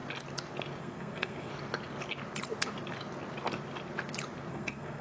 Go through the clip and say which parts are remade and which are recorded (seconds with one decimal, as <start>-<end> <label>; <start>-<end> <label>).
0.0-0.8 recorded; 0.8-1.5 remade; 1.5-4.5 recorded; 4.5-5.0 remade